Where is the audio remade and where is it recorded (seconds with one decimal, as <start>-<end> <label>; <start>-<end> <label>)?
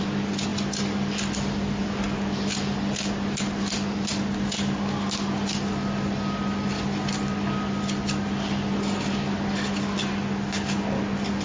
0.0-11.4 recorded